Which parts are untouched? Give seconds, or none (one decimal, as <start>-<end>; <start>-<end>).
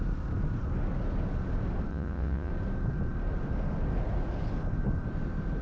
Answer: 0.0-1.9; 2.5-5.6